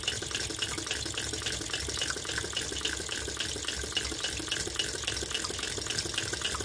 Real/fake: real